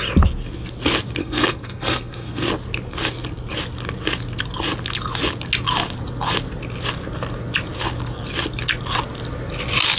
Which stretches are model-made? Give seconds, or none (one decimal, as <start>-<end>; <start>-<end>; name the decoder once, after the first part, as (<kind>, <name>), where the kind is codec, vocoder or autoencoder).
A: 1.2-2.5 (codec, SNAC)